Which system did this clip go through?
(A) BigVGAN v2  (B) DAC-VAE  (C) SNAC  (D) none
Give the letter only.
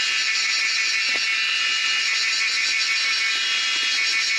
D